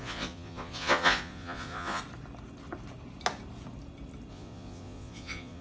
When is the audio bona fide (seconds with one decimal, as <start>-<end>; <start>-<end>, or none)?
2.0-4.3